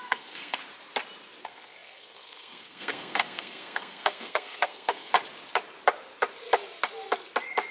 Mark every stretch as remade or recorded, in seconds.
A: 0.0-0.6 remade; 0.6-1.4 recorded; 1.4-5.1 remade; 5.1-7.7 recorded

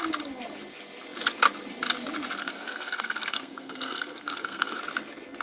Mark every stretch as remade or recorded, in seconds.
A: 0.0-2.4 recorded; 2.4-4.8 remade; 4.8-5.4 recorded

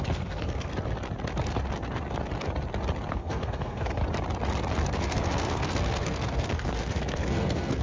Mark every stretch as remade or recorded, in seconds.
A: 0.0-0.7 remade; 0.7-3.1 recorded; 3.1-4.0 remade; 4.0-5.0 recorded; 5.0-7.8 remade

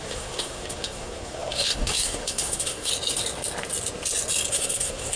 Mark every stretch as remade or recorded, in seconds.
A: 0.0-2.9 remade; 2.9-4.5 recorded; 4.5-5.2 remade